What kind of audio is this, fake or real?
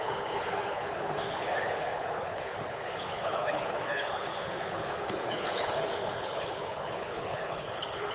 fake